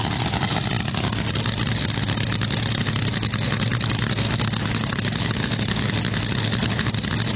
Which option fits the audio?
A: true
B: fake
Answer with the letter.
A